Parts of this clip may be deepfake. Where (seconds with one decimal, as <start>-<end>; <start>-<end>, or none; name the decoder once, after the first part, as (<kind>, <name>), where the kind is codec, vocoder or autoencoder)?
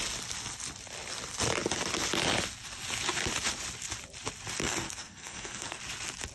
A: 4.6-5.8 (codec, SNAC)